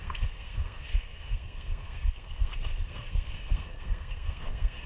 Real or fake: fake